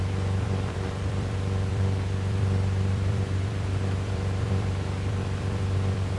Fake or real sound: fake